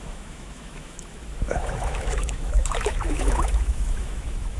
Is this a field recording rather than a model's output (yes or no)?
no